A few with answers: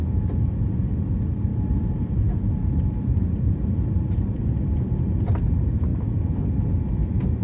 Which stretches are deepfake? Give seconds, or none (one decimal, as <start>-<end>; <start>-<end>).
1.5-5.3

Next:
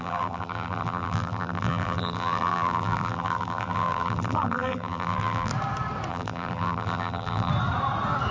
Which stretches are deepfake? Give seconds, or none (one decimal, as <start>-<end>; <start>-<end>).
0.0-5.5; 6.1-7.5

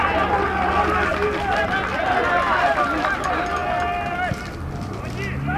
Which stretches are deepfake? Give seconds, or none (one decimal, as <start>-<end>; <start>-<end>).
none

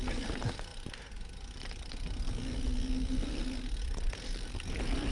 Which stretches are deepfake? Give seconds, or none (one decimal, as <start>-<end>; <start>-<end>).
none